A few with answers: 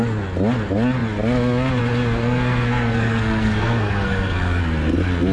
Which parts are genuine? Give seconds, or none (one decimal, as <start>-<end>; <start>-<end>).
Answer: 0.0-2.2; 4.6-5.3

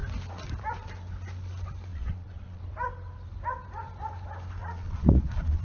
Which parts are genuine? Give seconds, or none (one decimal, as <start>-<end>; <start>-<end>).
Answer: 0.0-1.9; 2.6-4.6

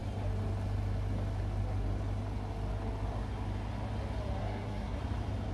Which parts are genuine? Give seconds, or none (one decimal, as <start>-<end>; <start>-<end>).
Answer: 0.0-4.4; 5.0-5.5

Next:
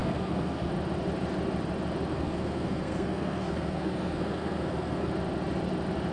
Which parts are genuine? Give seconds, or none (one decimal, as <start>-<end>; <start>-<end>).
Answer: 0.7-2.1; 5.1-6.1